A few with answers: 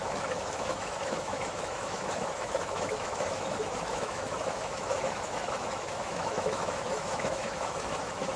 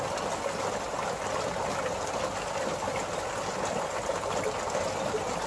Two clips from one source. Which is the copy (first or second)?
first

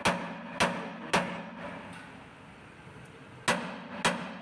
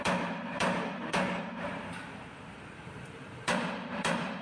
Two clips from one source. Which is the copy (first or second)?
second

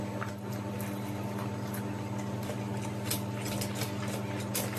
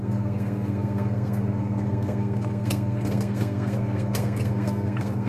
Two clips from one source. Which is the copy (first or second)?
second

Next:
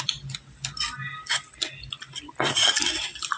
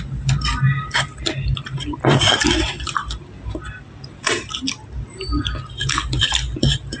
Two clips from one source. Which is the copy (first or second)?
second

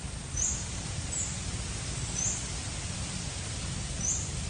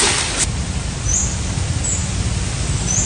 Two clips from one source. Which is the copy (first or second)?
first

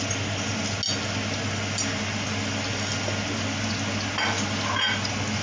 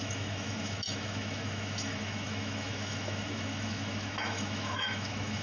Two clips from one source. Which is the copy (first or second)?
second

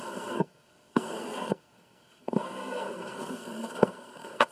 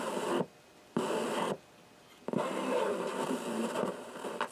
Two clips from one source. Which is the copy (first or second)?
first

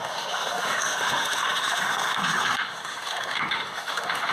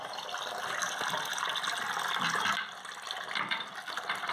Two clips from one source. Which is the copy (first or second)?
first